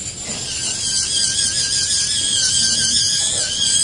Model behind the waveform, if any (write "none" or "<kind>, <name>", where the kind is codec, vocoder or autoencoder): none